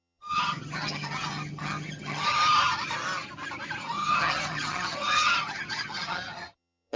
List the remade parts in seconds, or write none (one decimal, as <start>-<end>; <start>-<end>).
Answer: 0.0-2.3; 3.8-7.0